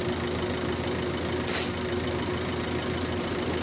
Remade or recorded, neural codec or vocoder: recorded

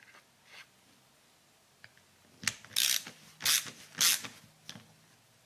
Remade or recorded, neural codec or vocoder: recorded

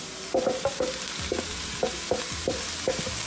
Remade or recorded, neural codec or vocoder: recorded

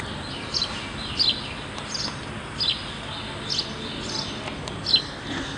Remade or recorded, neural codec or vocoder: recorded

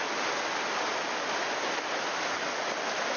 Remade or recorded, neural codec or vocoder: recorded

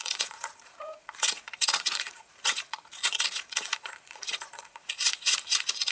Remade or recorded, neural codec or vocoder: remade, vocoder, Vocos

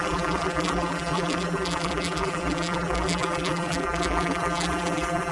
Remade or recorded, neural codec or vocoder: remade, vocoder, BigVGAN v2